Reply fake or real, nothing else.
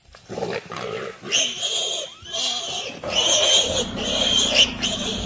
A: real